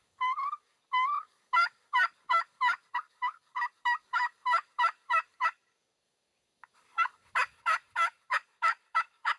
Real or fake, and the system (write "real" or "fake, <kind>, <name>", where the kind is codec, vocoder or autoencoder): fake, codec, DAC